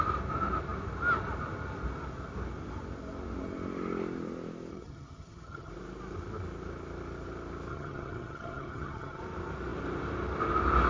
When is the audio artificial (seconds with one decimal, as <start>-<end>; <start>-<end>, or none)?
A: 4.7-5.7; 7.7-9.2